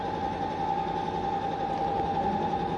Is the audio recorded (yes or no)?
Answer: yes